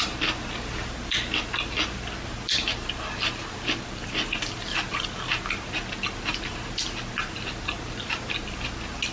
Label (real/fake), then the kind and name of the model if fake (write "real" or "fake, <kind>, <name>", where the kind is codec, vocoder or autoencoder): real